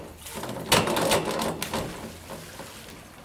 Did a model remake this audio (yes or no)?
no